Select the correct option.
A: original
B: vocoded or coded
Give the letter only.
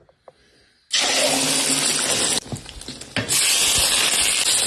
A